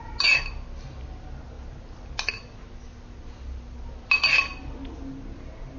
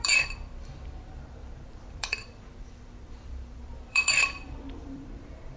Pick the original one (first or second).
first